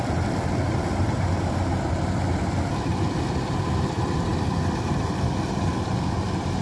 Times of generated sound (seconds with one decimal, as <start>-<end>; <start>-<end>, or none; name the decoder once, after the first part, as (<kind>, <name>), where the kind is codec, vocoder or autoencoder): none